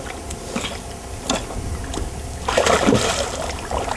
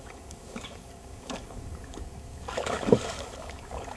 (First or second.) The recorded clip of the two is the first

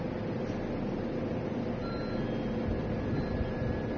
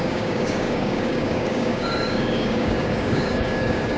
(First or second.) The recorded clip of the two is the first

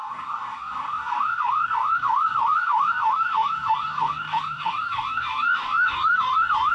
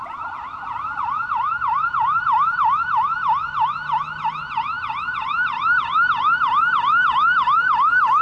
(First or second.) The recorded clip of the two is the second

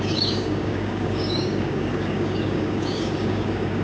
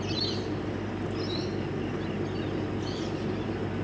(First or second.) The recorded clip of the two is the second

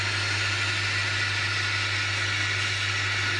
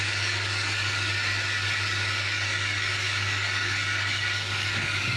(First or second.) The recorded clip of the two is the first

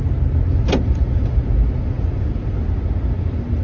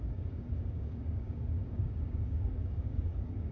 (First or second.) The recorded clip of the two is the first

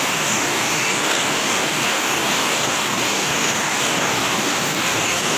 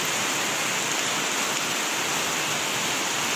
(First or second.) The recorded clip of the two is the second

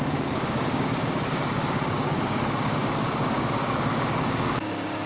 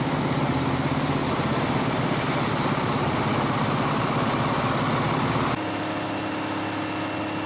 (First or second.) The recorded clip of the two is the second